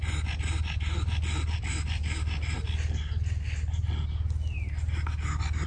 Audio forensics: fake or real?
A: real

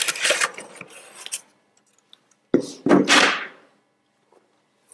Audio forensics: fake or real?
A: real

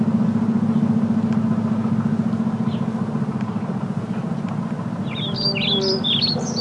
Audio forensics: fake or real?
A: real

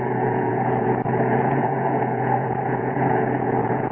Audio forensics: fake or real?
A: fake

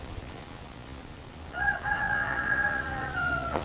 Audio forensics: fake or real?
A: fake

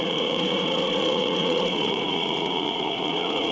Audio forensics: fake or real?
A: fake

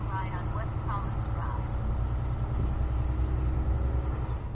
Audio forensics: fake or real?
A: real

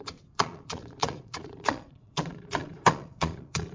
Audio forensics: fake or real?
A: fake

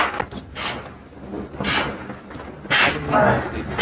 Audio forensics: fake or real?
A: real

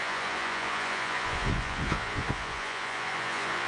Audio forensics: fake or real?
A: fake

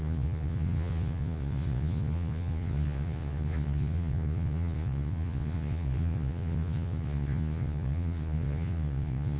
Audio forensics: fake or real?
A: fake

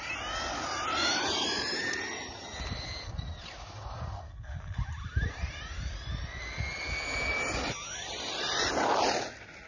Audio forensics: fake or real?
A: real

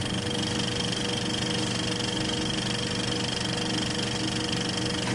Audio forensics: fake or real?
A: real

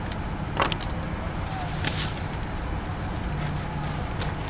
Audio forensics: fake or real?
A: real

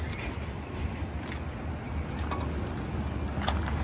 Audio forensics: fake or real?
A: real